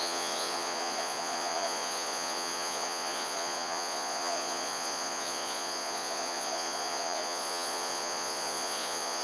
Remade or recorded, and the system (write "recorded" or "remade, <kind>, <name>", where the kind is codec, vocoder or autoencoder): remade, vocoder, Vocos